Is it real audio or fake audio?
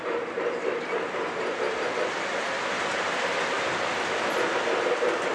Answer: real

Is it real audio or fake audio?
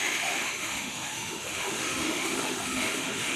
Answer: fake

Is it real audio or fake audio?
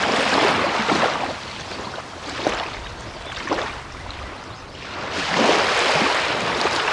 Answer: real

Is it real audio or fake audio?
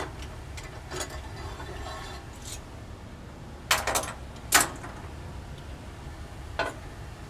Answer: real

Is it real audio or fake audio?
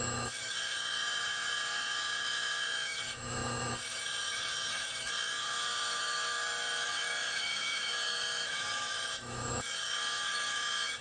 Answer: fake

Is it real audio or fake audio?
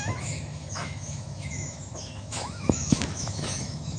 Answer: fake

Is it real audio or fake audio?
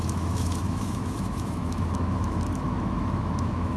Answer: fake